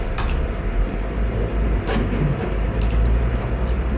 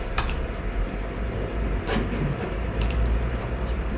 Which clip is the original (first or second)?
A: first